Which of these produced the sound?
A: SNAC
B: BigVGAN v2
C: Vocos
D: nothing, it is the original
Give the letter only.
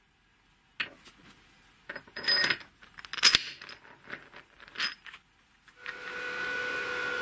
D